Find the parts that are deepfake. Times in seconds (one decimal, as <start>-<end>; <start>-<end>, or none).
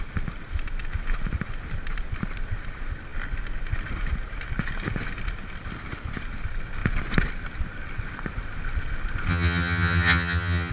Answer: 9.3-10.7